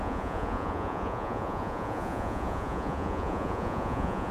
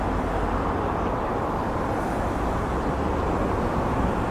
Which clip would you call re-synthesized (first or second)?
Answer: first